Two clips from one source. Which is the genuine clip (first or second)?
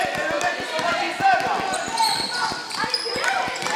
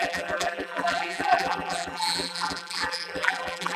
first